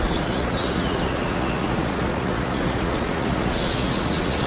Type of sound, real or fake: fake